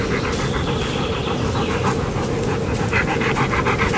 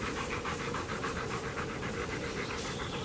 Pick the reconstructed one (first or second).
second